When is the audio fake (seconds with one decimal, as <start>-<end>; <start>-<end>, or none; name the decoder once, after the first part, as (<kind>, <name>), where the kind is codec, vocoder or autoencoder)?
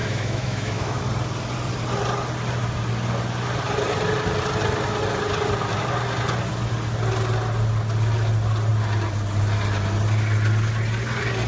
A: 0.0-1.0 (autoencoder, DAC-VAE)